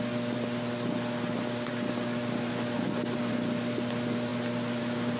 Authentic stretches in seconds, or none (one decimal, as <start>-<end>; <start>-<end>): 0.0-5.2